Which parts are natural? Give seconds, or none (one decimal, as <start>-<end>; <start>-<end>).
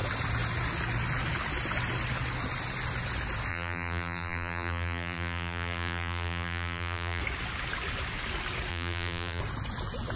0.0-3.5; 7.2-8.7; 9.4-10.2